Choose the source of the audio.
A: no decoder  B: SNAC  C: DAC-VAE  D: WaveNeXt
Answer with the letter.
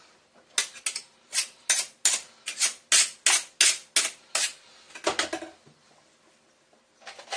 A